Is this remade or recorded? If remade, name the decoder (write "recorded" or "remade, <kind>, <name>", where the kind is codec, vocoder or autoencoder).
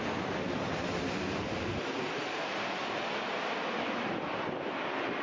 recorded